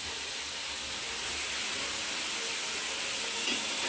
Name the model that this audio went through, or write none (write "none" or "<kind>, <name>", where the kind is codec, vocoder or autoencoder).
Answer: none